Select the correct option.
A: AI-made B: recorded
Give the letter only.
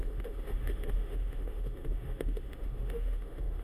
A